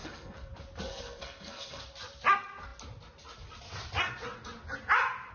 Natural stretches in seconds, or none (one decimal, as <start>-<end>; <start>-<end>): 0.5-0.9; 1.8-5.3

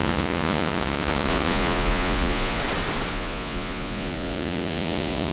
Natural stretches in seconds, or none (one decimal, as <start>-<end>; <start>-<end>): 2.6-3.1

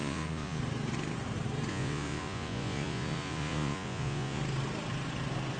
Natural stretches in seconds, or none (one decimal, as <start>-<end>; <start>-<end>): 0.6-1.7; 4.4-5.6

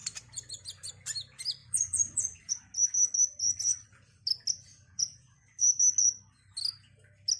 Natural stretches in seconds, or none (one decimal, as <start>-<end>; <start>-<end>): 0.0-1.6; 2.6-4.9; 5.5-7.4

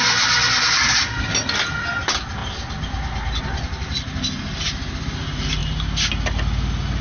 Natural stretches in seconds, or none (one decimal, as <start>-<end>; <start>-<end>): 0.0-7.0

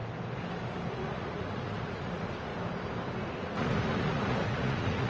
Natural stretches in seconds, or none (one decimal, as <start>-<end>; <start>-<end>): 0.0-1.0; 2.5-3.3

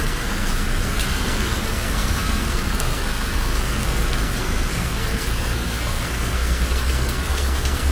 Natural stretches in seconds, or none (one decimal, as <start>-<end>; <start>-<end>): none

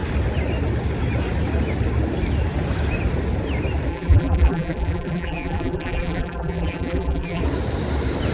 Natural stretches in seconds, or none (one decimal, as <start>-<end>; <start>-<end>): 0.0-3.9; 7.4-8.3